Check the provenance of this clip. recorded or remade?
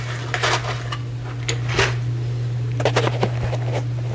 recorded